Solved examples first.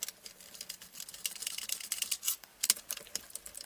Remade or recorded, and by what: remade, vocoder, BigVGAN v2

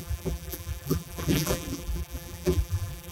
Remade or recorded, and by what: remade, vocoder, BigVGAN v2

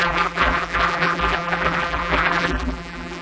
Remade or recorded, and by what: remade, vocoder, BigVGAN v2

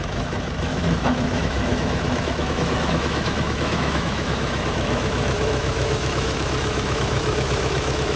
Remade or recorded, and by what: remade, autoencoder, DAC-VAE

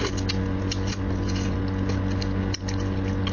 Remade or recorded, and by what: recorded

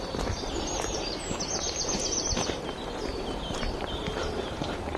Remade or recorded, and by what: remade, vocoder, BigVGAN v2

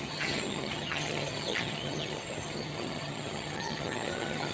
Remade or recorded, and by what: remade, vocoder, HiFi-GAN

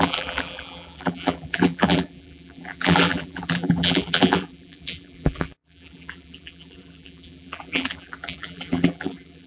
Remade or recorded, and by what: remade, vocoder, BigVGAN v2